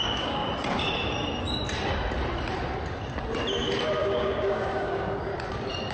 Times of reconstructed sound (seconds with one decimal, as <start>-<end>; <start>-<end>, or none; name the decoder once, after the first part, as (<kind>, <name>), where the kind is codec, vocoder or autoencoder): 0.0-0.5 (codec, DAC); 4.0-5.3